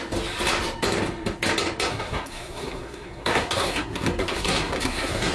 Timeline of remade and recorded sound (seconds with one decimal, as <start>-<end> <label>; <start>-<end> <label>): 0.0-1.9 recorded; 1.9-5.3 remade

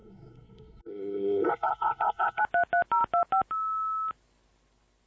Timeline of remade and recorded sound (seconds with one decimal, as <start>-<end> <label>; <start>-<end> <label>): 0.0-2.4 remade; 2.4-5.1 recorded

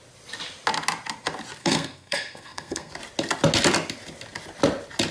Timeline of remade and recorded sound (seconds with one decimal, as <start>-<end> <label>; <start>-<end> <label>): 0.0-1.6 recorded; 1.6-2.9 remade; 2.9-5.1 recorded

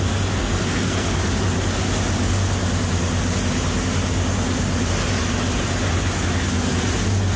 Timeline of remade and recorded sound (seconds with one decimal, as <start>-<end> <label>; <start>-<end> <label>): 0.0-0.4 recorded; 0.4-1.3 remade; 1.3-7.4 recorded